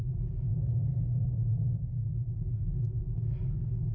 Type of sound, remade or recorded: recorded